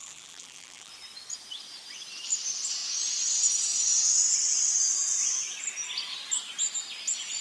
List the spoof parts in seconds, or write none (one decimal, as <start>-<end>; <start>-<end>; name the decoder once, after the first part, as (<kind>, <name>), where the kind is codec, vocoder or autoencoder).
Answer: 0.0-0.9 (vocoder, BigVGAN v2)

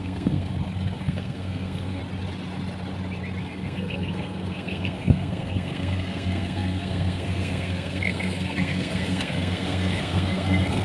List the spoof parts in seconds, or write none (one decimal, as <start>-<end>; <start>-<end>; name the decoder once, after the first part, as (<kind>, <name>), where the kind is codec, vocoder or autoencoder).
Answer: 0.0-0.5 (codec, SNAC); 1.0-2.0; 3.4-10.8

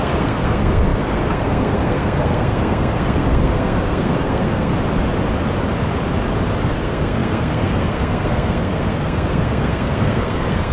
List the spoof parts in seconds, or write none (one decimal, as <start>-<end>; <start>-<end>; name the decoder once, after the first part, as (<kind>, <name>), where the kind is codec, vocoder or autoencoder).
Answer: 0.0-4.7 (codec, SNAC); 6.6-10.7

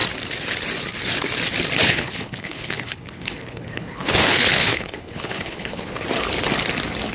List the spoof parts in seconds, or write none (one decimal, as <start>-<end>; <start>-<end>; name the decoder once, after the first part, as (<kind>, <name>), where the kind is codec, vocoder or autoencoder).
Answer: 1.8-6.0 (codec, HILCodec)

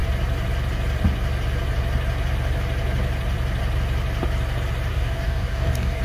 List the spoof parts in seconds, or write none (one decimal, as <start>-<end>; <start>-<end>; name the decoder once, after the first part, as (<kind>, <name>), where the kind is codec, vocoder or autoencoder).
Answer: 4.9-6.0 (codec, DAC)

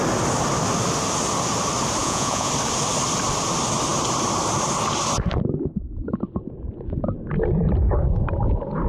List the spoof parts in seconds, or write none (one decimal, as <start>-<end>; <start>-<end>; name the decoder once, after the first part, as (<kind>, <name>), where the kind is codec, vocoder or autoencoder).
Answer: 2.0-2.5 (vocoder, Vocos)